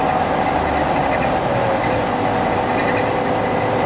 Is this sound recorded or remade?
recorded